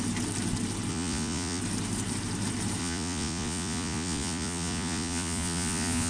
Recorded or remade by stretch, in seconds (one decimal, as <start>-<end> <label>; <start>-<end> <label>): 0.0-0.9 recorded; 0.9-1.6 remade; 1.6-2.8 recorded; 2.8-6.1 remade